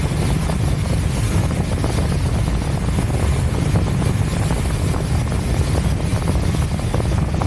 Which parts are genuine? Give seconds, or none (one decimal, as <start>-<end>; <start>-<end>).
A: 0.0-7.5